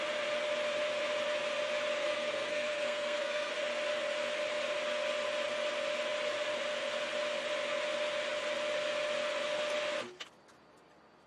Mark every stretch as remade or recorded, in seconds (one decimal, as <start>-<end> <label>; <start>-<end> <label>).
0.0-2.0 recorded; 2.0-3.5 remade; 3.5-11.3 recorded